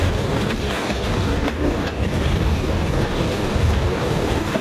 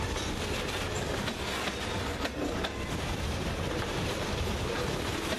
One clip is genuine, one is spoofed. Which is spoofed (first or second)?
first